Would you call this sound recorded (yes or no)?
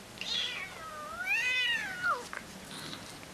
yes